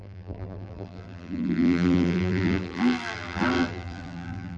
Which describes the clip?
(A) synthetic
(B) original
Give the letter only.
A